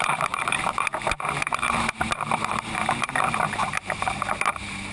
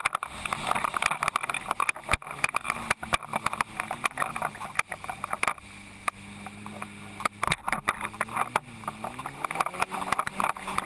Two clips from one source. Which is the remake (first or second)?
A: first